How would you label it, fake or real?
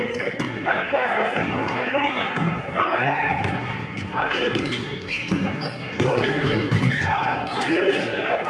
fake